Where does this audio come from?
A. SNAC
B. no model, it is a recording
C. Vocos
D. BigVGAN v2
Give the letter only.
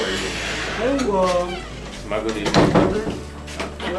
B